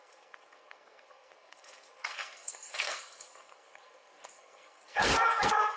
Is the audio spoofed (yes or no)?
yes